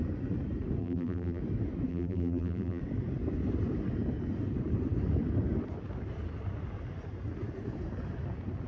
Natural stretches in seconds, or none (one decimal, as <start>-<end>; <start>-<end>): 0.0-0.8; 1.4-1.9; 2.8-8.7